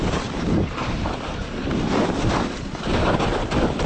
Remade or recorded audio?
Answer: remade